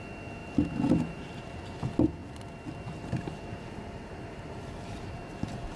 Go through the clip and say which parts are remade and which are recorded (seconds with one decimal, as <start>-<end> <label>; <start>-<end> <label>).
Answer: 0.0-0.4 recorded; 0.4-1.8 remade; 1.8-2.2 recorded; 2.2-5.8 remade